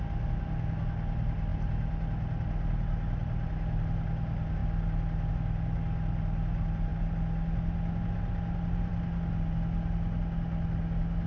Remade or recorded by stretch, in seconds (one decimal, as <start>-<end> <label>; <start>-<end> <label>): 0.0-11.3 recorded